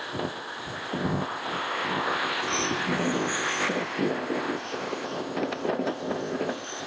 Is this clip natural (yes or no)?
no